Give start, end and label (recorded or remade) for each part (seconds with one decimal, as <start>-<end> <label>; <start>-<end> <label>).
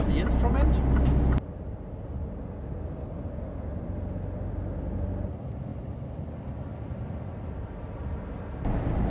0.0-9.1 recorded